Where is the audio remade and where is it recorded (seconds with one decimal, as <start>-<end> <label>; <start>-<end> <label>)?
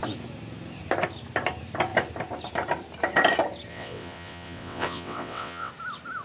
0.0-3.7 recorded; 3.7-5.7 remade; 5.7-6.2 recorded